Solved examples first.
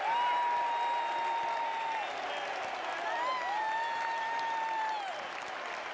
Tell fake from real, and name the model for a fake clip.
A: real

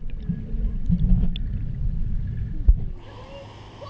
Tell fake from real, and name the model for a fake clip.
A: real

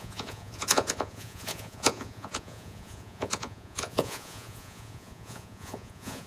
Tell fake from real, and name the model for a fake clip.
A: fake, vocoder, Vocos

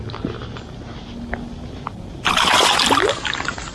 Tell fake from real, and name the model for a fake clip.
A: real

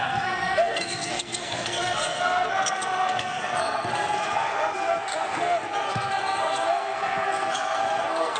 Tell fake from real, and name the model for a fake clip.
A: fake, codec, SNAC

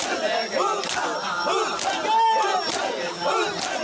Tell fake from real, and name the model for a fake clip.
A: real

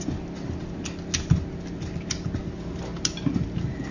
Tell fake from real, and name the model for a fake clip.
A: real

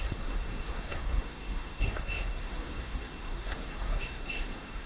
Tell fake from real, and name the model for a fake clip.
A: fake, codec, SNAC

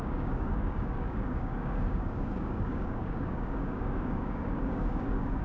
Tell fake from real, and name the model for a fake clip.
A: fake, codec, DAC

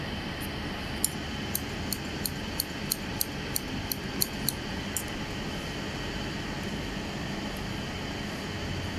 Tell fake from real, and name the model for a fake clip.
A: real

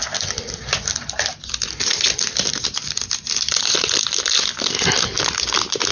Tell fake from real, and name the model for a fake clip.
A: real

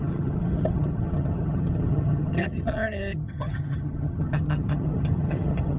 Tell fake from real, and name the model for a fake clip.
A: fake, vocoder, HiFi-GAN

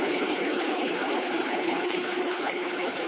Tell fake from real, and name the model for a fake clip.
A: fake, codec, HILCodec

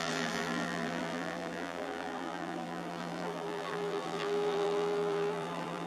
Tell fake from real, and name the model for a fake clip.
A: fake, vocoder, BigVGAN v2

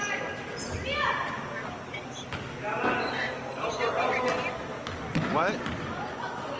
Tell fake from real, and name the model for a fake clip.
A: real